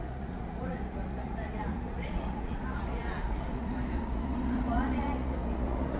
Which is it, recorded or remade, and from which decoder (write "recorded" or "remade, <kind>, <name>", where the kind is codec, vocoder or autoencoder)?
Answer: remade, vocoder, Vocos